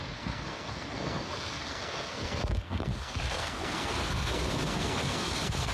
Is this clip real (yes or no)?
no